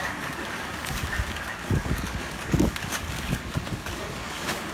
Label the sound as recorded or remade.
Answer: remade